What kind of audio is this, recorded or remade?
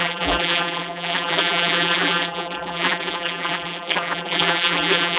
remade